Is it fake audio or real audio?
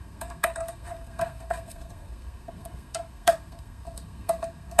fake